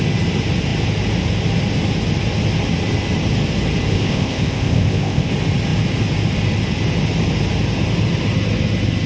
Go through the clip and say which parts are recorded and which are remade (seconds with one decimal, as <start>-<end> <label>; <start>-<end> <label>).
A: 0.0-3.9 recorded; 3.9-5.3 remade; 5.3-9.1 recorded